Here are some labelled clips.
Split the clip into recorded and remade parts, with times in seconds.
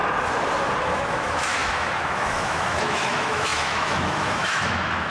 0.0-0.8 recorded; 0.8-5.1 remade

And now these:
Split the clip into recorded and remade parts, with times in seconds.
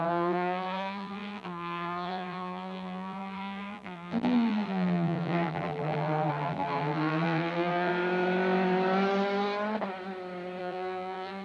0.0-7.9 remade; 7.9-10.6 recorded; 10.6-11.4 remade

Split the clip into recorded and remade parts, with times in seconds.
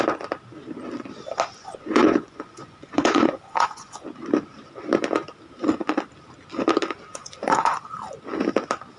0.0-1.6 recorded; 1.6-4.0 remade; 4.0-7.1 recorded; 7.1-7.8 remade; 7.8-9.0 recorded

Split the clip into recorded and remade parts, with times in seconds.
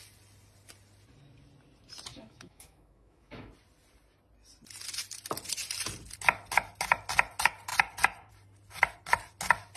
0.0-2.1 recorded; 2.1-3.5 remade; 3.5-9.8 recorded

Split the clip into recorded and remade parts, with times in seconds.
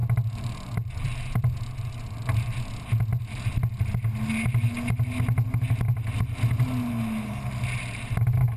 0.0-1.5 remade; 1.5-8.6 recorded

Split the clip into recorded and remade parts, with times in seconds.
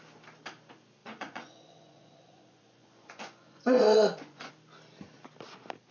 0.0-1.0 recorded; 1.0-4.5 remade; 4.5-5.9 recorded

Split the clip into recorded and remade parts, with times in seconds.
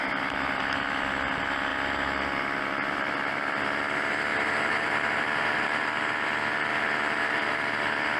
0.0-4.3 recorded; 4.3-5.9 remade; 5.9-6.7 recorded; 6.7-7.5 remade; 7.5-8.2 recorded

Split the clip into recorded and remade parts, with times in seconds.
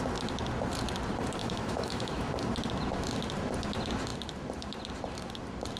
0.0-1.4 recorded; 1.4-2.3 remade; 2.3-5.8 recorded